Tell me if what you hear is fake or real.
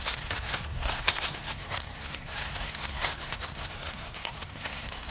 fake